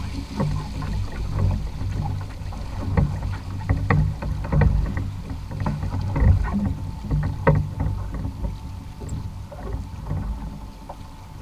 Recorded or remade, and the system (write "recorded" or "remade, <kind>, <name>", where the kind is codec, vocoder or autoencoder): recorded